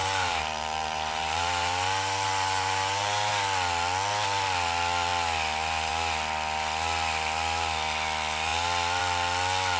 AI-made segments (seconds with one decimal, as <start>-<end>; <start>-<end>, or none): 0.0-3.3